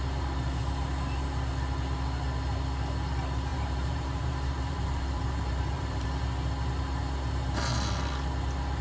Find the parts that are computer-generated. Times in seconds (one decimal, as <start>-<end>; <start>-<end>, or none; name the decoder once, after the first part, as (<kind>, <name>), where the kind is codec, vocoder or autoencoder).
3.5-6.1 (vocoder, BigVGAN v2)